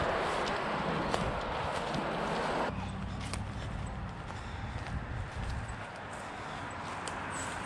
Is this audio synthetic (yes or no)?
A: no